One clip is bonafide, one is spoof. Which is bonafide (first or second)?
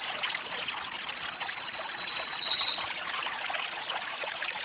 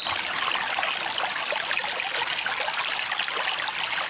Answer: second